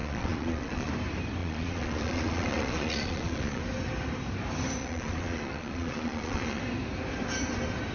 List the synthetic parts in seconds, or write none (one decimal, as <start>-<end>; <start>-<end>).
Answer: 0.0-0.9; 1.4-3.6; 4.8-6.6